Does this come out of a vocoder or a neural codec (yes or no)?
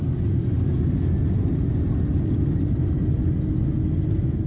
no